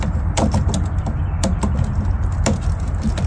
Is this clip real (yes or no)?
yes